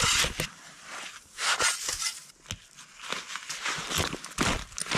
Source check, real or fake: real